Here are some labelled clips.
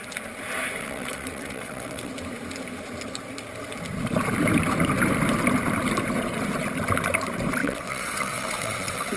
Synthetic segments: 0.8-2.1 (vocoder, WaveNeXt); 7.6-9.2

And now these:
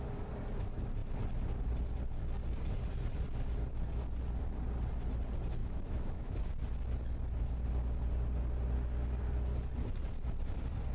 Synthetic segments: 5.6-6.5 (autoencoder, DAC-VAE)

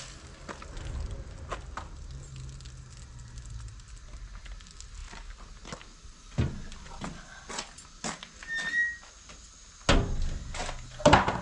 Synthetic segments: none

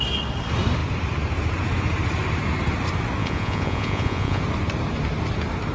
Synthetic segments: 3.2-4.4 (vocoder, Vocos)

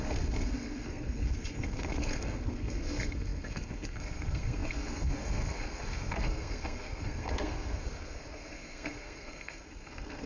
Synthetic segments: 0.0-10.3 (codec, SNAC)

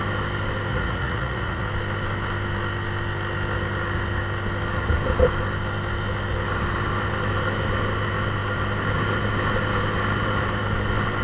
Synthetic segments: 0.7-1.7 (vocoder, Vocos)

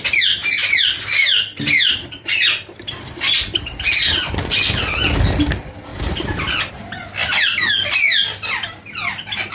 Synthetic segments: 0.4-1.0 (vocoder, BigVGAN v2); 1.5-3.3; 5.9-6.7

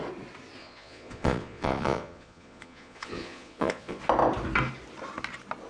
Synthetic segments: 0.6-4.0 (vocoder, Vocos)